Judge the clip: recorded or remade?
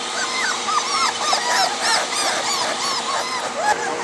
remade